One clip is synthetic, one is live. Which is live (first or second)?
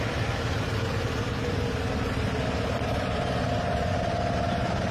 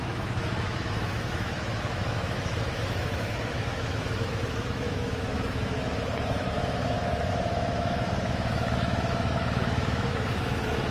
first